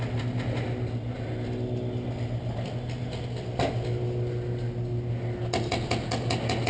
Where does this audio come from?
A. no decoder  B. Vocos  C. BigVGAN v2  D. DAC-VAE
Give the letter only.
A